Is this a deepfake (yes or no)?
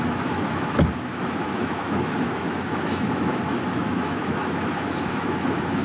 yes